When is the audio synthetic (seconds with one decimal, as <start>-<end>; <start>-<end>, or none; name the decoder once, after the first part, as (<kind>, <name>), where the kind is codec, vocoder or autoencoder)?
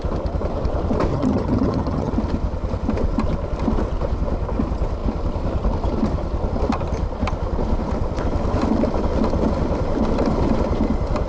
1.1-2.1 (vocoder, HiFi-GAN)